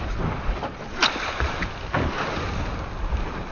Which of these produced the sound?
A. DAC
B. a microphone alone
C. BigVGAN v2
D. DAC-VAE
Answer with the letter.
B